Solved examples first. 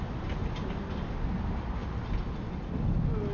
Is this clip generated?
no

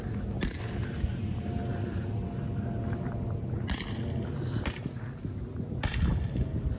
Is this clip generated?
no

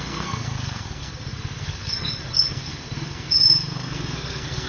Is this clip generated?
yes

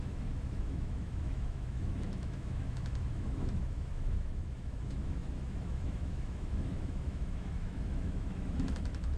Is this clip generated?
yes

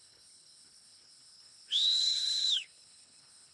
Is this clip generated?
yes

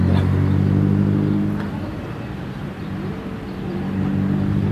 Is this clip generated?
no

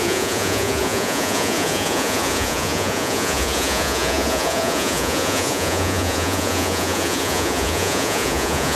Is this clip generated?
yes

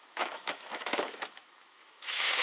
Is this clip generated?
yes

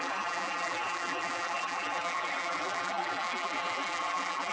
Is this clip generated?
yes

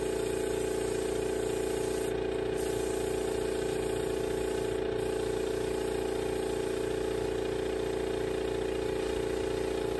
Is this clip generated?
no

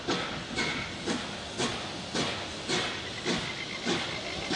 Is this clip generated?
no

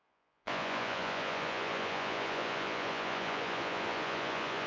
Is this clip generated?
yes